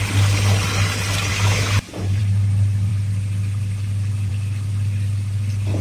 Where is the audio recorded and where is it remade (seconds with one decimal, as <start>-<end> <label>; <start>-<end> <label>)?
0.0-1.3 recorded; 1.3-2.2 remade; 2.2-5.8 recorded